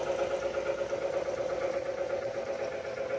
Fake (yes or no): no